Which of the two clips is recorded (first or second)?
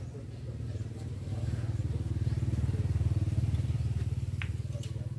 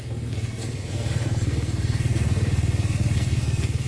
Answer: first